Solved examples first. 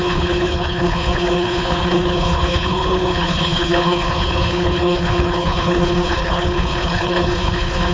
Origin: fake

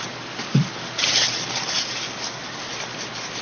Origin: real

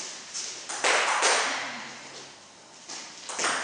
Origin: real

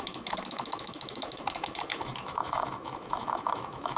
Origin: fake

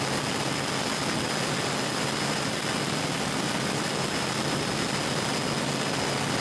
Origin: real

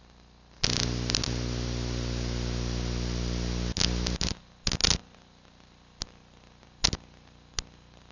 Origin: real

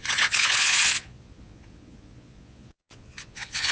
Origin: fake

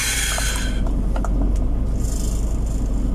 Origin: real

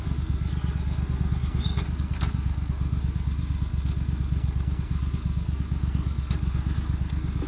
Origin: fake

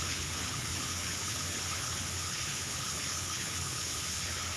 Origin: fake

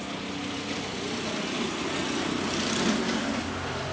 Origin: real